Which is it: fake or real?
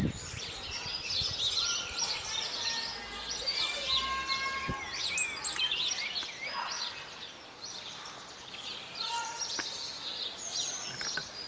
real